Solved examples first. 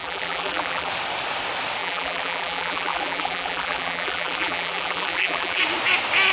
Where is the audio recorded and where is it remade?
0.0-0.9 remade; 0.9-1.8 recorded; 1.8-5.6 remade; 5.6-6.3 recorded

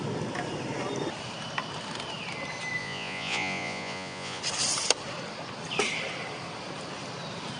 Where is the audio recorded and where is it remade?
0.0-2.8 recorded; 2.8-4.4 remade; 4.4-7.6 recorded

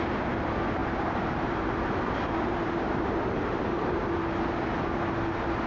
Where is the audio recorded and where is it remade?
0.0-0.8 recorded; 0.8-4.2 remade; 4.2-5.7 recorded

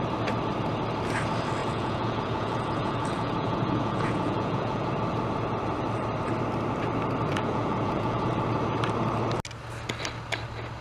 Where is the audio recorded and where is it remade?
0.0-1.6 recorded; 1.6-4.9 remade; 4.9-7.3 recorded; 7.3-8.3 remade; 8.3-10.8 recorded

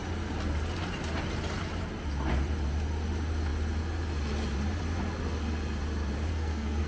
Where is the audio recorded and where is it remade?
0.0-6.3 recorded; 6.3-6.9 remade

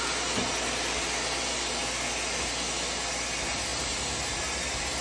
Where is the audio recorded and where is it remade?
0.0-5.0 recorded

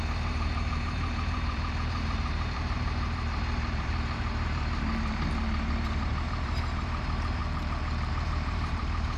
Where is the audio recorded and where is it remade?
0.0-7.4 remade; 7.4-8.1 recorded; 8.1-9.2 remade

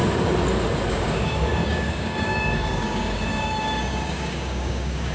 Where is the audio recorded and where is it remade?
0.0-0.9 recorded; 0.9-5.1 remade